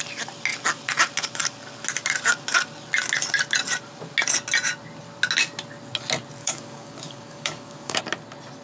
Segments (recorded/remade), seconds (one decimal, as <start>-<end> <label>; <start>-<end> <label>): 0.0-6.4 recorded; 6.4-8.0 remade; 8.0-8.6 recorded